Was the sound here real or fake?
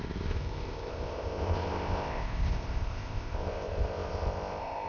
fake